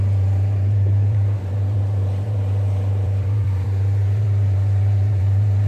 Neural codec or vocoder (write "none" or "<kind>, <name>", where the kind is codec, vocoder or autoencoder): vocoder, BigVGAN v2